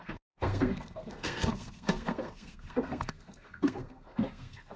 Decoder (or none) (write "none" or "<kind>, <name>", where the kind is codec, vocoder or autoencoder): codec, SNAC